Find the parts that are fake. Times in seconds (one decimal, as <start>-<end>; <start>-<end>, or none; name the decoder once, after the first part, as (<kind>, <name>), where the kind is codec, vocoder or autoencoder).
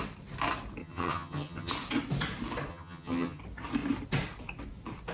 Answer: 0.8-1.7 (vocoder, HiFi-GAN); 2.7-3.4